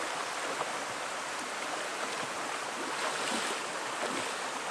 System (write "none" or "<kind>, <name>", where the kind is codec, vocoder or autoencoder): none